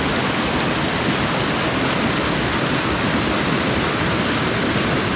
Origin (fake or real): real